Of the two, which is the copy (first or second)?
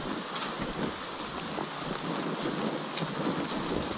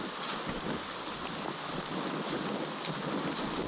second